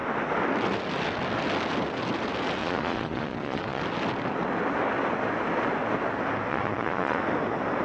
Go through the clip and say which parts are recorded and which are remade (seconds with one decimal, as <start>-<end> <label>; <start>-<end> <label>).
0.0-2.6 recorded; 2.6-3.8 remade; 3.8-6.5 recorded; 6.5-7.2 remade; 7.2-7.8 recorded